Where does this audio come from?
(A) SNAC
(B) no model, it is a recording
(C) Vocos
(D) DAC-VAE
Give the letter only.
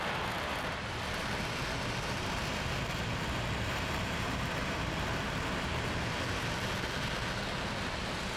B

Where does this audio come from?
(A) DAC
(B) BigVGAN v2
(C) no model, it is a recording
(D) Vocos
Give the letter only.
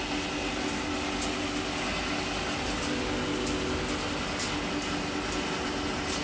C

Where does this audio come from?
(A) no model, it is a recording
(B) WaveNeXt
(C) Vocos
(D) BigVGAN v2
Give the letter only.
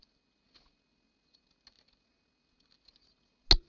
A